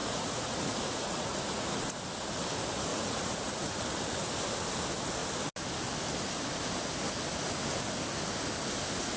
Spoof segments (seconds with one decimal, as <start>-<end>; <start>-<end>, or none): 0.0-2.0; 2.9-3.8